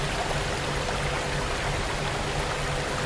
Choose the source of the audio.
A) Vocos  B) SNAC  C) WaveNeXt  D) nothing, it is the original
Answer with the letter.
D